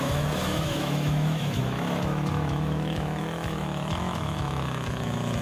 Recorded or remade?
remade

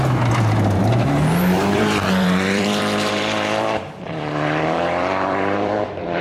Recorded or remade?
remade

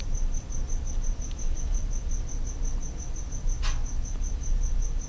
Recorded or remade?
recorded